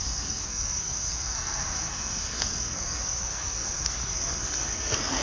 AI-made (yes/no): yes